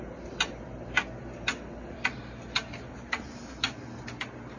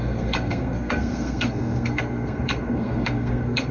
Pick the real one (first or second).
first